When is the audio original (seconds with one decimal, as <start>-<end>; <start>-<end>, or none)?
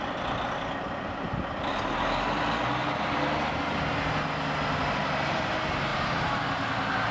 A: 0.0-7.1